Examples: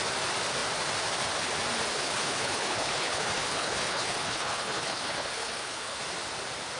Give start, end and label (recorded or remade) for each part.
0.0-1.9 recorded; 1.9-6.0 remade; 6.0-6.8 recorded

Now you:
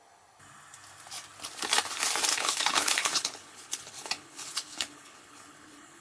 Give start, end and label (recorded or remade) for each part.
0.0-2.3 recorded; 2.3-6.0 remade

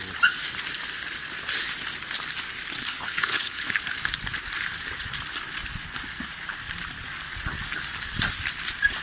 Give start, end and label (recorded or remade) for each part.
0.0-2.8 recorded; 2.8-3.7 remade; 3.7-9.0 recorded

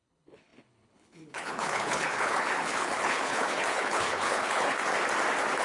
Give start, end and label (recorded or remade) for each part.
0.0-4.8 remade; 4.8-5.6 recorded

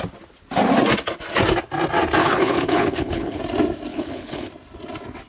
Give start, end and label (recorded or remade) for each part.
0.0-2.2 recorded; 2.2-3.4 remade; 3.4-3.9 recorded; 3.9-4.5 remade; 4.5-5.3 recorded

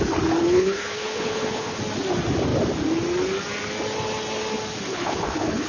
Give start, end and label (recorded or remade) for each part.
0.0-0.4 recorded; 0.4-1.8 remade; 1.8-4.9 recorded; 4.9-5.7 remade